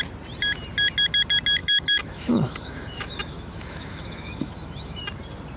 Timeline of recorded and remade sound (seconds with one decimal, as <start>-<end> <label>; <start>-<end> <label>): 0.0-1.6 recorded; 1.6-5.0 remade; 5.0-5.6 recorded